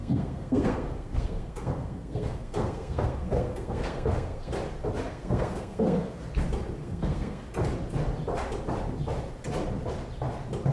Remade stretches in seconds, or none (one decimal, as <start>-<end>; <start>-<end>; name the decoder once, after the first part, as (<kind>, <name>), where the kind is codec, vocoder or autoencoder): 0.0-4.5 (codec, SNAC); 5.1-6.2; 6.8-7.4